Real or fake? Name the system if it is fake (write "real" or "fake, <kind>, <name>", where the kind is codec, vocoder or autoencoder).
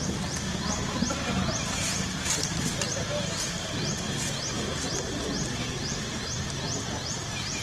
real